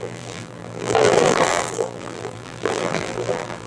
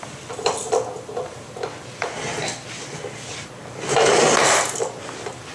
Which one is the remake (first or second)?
first